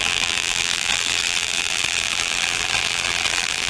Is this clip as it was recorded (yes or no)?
no